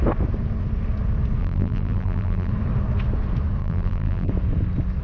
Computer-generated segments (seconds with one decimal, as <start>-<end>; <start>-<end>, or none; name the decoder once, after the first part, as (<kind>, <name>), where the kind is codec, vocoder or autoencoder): 1.4-2.5 (vocoder, BigVGAN v2); 3.6-4.3